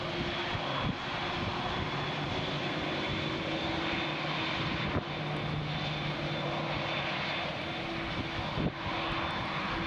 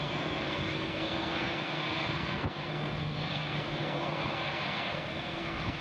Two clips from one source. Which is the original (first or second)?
first